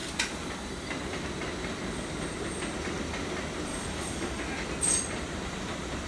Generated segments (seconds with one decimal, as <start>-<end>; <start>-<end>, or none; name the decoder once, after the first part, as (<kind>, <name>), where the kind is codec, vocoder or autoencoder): 3.7-4.4 (codec, DAC)